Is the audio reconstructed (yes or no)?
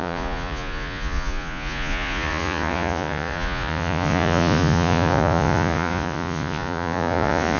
yes